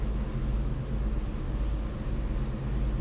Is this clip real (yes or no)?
yes